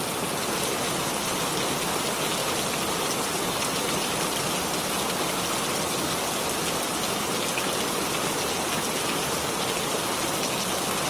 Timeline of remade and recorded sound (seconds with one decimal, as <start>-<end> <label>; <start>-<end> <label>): 0.0-11.1 recorded